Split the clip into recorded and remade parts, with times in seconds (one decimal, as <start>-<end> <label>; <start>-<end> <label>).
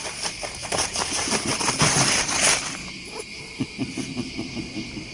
0.0-0.6 recorded; 0.6-1.5 remade; 1.5-5.1 recorded